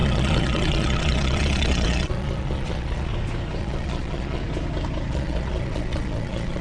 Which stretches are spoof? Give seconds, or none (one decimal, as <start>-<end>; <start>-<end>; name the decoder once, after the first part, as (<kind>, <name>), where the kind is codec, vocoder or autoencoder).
0.0-3.1 (vocoder, Vocos); 3.6-4.4; 5.1-6.6